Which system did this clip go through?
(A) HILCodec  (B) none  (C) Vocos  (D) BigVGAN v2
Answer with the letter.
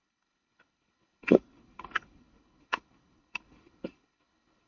A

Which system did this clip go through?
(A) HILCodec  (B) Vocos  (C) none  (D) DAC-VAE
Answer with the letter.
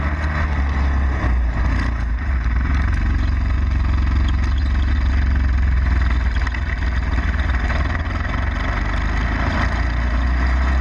C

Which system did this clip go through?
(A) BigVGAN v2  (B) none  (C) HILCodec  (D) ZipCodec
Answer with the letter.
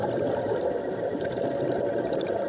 B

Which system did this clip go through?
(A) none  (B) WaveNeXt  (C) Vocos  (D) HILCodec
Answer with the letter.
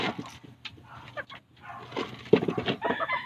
A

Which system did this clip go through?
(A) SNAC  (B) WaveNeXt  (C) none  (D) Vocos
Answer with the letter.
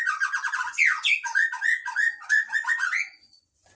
D